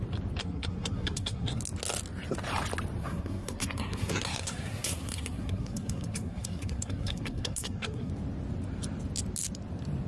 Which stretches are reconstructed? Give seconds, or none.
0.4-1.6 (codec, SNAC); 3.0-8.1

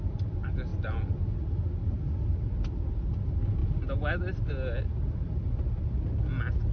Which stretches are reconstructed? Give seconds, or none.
none

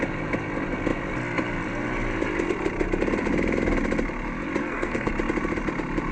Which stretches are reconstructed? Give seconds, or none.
4.6-5.1 (codec, SNAC)

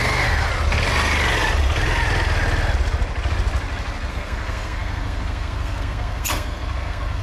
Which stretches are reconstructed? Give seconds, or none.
0.0-0.5 (codec, SNAC); 4.1-7.2

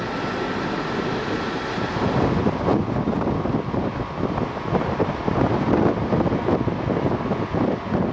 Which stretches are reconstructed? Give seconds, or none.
none

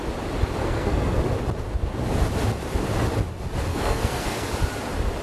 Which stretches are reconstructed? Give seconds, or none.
0.6-1.2 (codec, SNAC); 3.7-4.5